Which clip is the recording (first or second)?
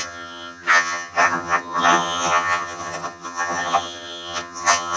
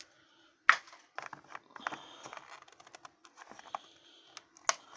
second